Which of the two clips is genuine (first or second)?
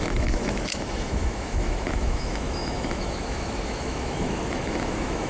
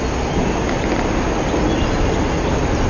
second